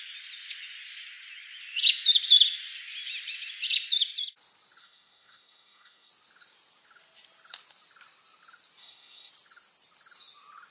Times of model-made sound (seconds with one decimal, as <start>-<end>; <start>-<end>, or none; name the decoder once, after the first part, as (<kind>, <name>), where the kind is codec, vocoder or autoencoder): 4.8-6.1 (codec, SNAC); 8.8-9.3

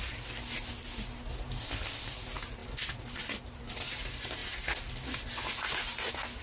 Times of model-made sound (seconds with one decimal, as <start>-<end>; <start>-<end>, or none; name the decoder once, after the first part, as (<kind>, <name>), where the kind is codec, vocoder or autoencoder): 1.6-2.1 (codec, ZipCodec)

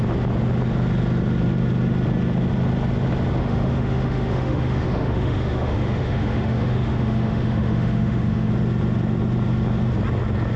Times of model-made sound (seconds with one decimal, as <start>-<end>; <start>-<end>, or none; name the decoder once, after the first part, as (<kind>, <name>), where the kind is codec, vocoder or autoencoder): 3.4-8.5 (autoencoder, DAC-VAE)

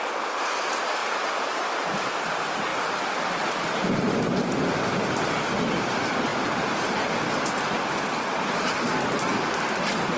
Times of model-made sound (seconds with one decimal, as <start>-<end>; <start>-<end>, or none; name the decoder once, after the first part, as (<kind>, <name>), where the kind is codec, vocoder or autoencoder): 1.0-2.3 (vocoder, BigVGAN v2)

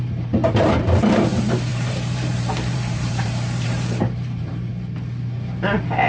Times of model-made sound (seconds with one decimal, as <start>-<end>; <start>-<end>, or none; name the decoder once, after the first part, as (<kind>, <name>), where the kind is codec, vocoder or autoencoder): 0.0-4.7 (vocoder, BigVGAN v2)

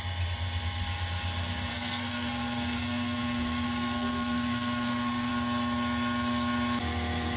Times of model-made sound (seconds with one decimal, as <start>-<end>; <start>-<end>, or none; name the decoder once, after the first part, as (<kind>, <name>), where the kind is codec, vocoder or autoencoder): 1.7-5.3 (codec, SNAC)

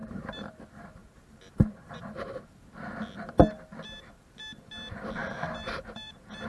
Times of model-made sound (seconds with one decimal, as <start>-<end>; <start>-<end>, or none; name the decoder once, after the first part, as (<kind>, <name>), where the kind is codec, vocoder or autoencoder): 0.0-0.6 (vocoder, BigVGAN v2); 1.0-2.5; 5.2-6.5

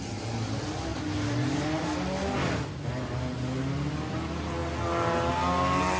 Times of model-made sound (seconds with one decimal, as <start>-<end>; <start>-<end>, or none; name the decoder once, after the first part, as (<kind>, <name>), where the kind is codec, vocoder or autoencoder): none